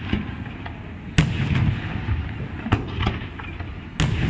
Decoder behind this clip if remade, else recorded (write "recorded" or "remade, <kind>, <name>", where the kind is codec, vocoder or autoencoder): recorded